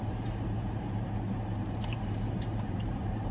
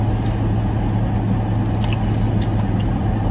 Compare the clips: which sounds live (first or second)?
second